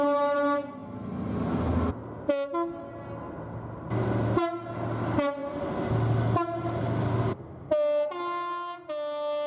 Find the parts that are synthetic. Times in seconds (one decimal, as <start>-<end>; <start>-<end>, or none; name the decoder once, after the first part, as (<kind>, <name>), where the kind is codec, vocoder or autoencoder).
none